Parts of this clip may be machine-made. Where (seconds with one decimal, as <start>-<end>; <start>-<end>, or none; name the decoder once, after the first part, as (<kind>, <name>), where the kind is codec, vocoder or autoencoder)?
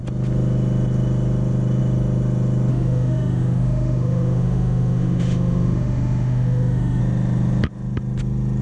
2.7-7.0 (autoencoder, DAC-VAE)